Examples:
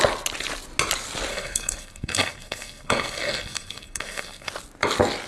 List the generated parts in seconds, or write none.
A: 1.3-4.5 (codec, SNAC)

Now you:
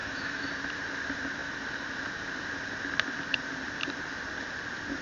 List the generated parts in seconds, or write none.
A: 0.0-0.5 (autoencoder, DAC-VAE)

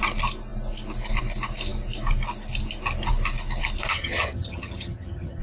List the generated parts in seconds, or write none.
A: 3.9-5.4 (vocoder, HiFi-GAN)

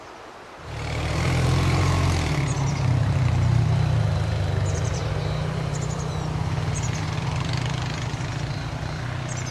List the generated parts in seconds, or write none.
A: 0.0-5.0 (vocoder, BigVGAN v2); 5.7-9.5